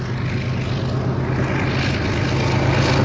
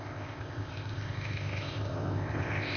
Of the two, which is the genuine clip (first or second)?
first